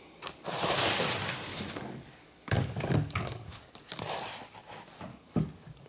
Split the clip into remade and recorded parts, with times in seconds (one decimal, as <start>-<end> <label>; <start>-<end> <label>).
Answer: 0.0-1.5 recorded; 1.5-3.6 remade; 3.6-5.1 recorded; 5.1-5.9 remade